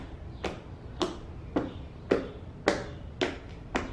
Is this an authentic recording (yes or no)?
yes